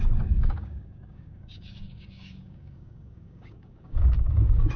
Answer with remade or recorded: remade